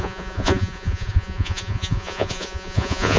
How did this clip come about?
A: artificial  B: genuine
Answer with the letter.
A